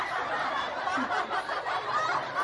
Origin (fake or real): fake